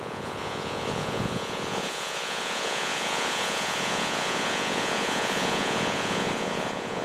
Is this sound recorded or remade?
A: remade